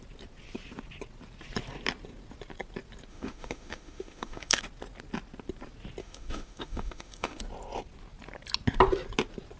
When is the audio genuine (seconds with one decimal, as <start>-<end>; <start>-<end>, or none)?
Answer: 0.0-3.1; 4.6-6.0; 7.4-9.6